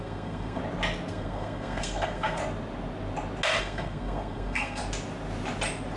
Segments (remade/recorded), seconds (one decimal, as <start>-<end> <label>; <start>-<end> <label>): 0.0-0.6 remade; 0.6-1.1 recorded; 1.1-2.4 remade; 2.4-3.6 recorded; 3.6-4.8 remade; 4.8-6.0 recorded